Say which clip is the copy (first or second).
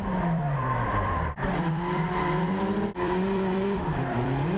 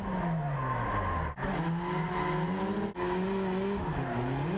first